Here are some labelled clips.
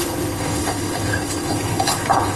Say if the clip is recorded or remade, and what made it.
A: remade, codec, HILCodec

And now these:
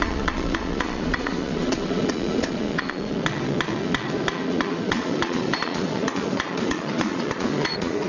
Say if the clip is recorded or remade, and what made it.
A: remade, vocoder, Vocos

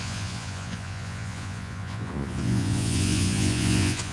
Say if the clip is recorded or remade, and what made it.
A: remade, vocoder, Vocos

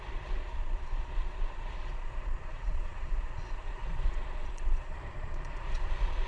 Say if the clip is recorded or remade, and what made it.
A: remade, vocoder, Vocos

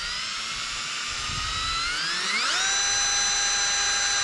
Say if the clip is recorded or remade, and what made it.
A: recorded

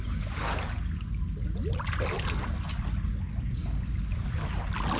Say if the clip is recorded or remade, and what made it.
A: recorded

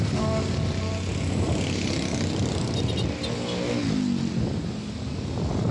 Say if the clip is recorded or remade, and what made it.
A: recorded